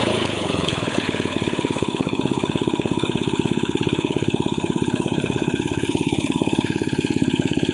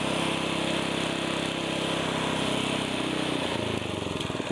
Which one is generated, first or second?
first